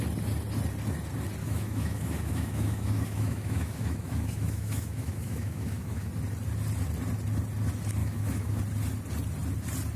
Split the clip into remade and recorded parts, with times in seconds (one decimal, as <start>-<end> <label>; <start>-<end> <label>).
0.0-1.4 recorded; 1.4-6.1 remade; 6.1-8.0 recorded; 8.0-8.6 remade; 8.6-10.0 recorded